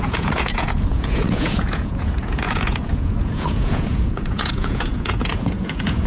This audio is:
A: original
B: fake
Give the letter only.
B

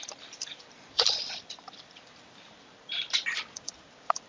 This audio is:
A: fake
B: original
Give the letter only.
A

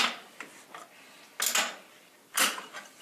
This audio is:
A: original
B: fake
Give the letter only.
A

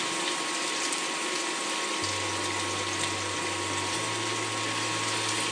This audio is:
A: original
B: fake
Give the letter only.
A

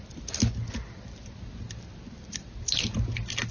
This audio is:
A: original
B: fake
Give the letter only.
A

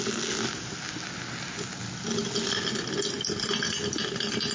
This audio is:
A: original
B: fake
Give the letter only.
A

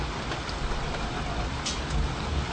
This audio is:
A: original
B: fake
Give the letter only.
A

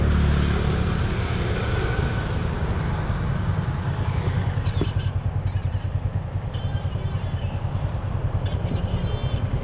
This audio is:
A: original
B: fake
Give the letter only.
A